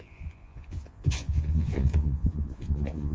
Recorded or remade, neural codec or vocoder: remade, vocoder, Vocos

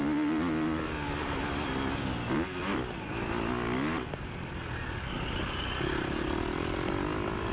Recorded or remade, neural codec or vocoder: recorded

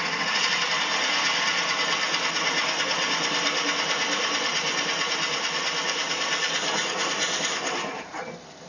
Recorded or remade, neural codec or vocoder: recorded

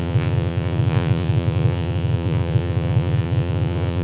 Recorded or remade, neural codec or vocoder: remade, vocoder, Vocos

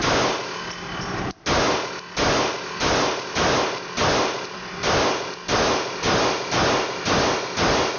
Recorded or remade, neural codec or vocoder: recorded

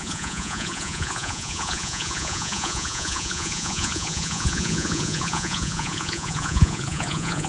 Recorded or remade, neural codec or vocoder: remade, vocoder, Vocos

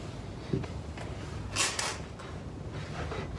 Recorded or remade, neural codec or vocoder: recorded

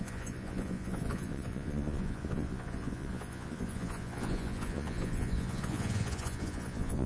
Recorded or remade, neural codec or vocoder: remade, vocoder, Vocos